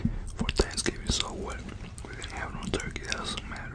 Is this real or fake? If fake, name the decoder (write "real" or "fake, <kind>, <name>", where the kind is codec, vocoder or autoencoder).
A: real